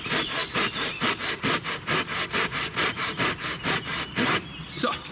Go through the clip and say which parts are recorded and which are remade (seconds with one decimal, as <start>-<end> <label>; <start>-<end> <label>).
0.0-5.1 recorded